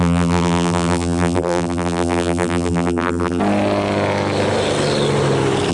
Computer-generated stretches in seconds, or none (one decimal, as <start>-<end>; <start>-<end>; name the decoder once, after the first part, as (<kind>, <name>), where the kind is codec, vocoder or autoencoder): 0.0-3.4 (vocoder, BigVGAN v2)